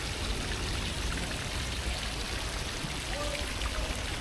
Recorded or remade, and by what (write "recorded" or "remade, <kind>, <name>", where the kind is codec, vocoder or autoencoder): recorded